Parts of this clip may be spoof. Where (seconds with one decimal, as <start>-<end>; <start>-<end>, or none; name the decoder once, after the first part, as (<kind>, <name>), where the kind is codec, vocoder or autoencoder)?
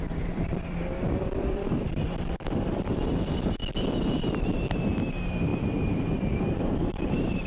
0.0-3.6 (vocoder, BigVGAN v2); 5.1-7.5